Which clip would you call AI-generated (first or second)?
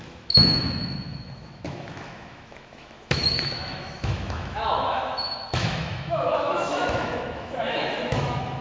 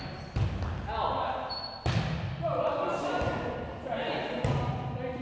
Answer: first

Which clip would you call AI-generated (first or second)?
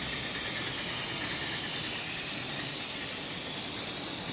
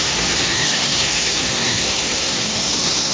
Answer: second